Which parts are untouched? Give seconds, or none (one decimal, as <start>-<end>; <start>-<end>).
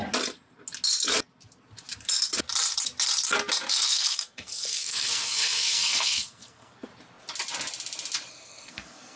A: 0.0-3.7; 6.9-8.3